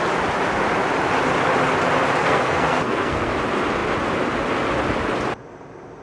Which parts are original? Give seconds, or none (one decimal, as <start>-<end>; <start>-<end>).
0.0-2.2; 3.3-6.0

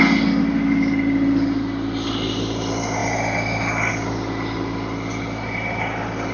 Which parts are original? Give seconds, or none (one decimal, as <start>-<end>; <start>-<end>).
0.0-6.3

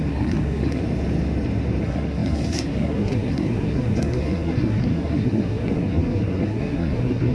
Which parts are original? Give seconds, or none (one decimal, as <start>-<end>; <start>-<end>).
0.8-1.8

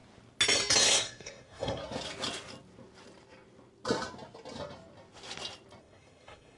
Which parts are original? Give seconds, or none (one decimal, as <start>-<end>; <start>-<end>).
0.0-0.8; 1.8-5.8

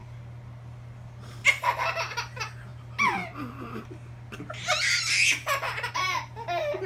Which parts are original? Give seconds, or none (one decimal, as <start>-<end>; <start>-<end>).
0.0-6.9

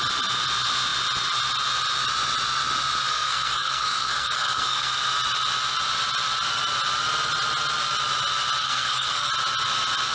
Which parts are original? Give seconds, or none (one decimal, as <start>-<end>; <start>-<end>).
0.0-3.1; 4.9-8.6; 9.3-10.1